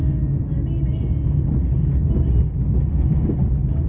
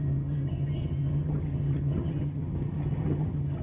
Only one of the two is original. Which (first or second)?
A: first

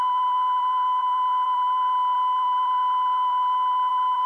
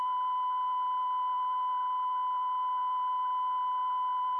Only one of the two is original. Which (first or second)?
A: second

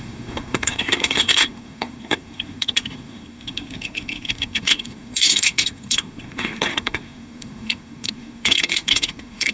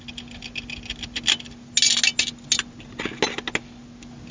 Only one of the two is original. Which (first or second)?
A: second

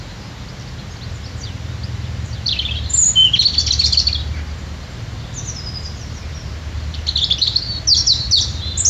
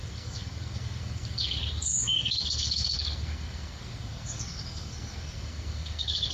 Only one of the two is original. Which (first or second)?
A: first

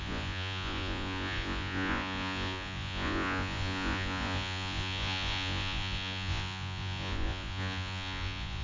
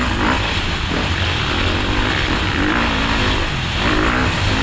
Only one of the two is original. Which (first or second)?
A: second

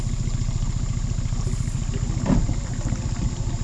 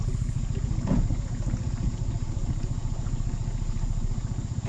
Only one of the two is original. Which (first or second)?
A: first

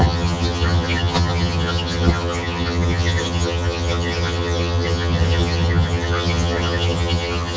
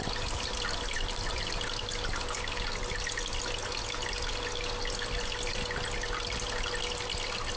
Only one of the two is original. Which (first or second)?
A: second